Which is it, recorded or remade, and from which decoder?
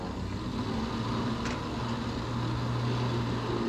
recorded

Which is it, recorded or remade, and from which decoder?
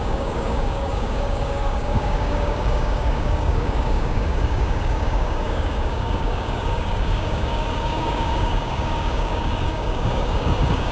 remade, codec, DAC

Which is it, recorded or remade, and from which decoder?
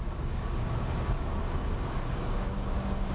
remade, codec, DAC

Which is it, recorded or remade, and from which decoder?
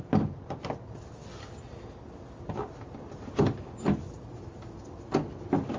recorded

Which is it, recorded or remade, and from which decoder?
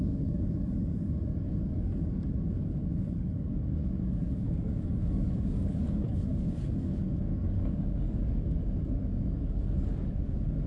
remade, codec, DAC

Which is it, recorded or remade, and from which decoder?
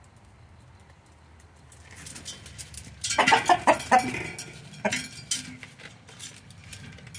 recorded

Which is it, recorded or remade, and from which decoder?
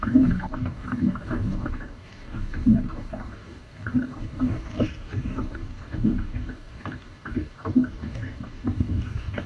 remade, codec, DAC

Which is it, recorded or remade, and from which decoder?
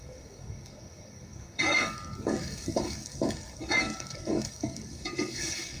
remade, codec, DAC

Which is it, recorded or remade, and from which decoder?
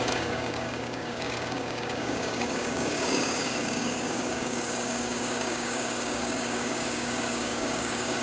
remade, codec, DAC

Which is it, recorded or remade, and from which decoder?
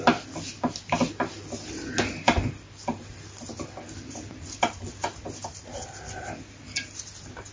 recorded